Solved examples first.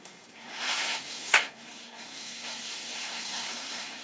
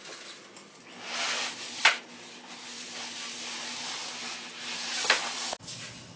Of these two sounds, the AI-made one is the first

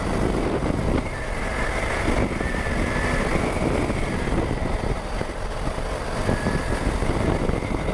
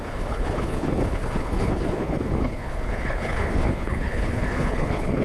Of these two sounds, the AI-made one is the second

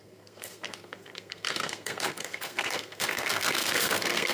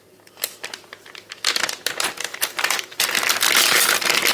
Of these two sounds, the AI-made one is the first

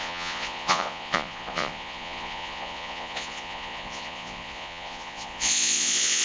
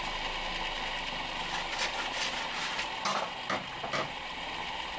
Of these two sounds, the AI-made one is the first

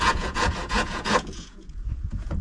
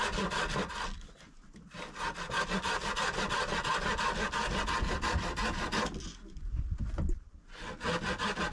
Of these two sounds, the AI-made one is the first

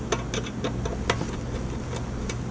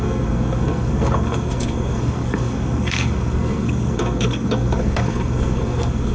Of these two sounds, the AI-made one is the second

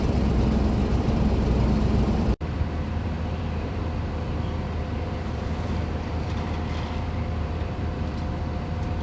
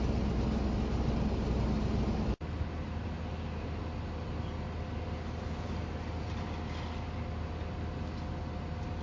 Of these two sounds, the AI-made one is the first